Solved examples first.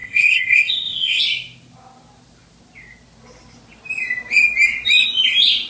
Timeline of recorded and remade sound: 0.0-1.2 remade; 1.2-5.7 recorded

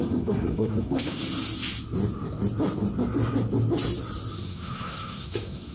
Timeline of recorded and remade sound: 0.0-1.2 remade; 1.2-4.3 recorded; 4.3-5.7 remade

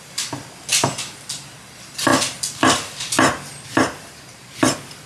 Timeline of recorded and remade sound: 0.0-5.1 recorded